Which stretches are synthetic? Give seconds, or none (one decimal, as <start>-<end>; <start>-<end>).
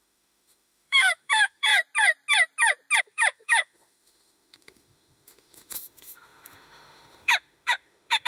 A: 0.0-1.7; 3.0-8.3